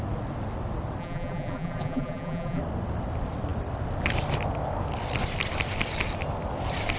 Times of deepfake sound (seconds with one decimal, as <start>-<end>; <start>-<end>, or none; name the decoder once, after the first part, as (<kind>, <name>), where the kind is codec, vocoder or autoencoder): 1.0-2.6 (vocoder, BigVGAN v2)